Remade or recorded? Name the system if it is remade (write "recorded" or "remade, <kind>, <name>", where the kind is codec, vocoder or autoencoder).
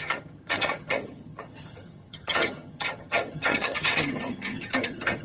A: remade, vocoder, HiFi-GAN